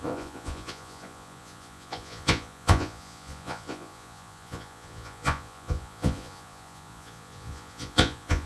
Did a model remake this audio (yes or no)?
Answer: yes